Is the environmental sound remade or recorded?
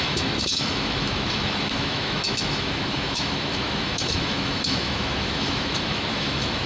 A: remade